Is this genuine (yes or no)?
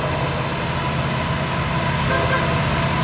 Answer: yes